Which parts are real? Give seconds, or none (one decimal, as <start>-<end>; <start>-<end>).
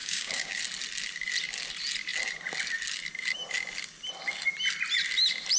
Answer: 0.6-5.6